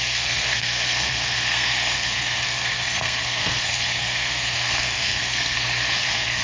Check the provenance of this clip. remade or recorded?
remade